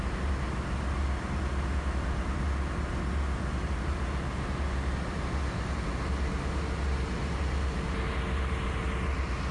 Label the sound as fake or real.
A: real